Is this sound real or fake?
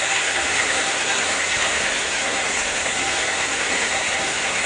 fake